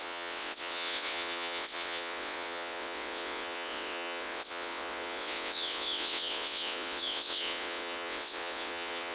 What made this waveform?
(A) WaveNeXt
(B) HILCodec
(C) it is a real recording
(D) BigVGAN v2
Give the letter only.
A